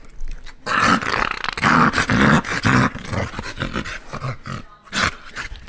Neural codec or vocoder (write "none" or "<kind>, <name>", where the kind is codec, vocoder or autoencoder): none